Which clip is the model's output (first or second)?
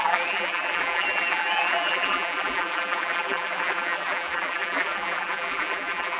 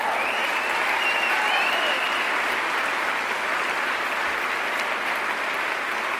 first